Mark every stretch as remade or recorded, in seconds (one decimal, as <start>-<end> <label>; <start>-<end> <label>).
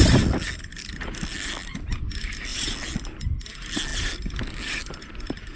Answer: 0.0-2.5 recorded; 2.5-3.5 remade; 3.5-5.6 recorded